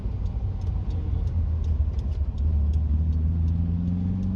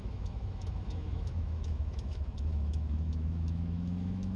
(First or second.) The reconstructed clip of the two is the second